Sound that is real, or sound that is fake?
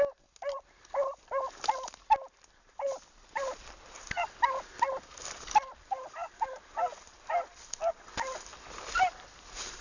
real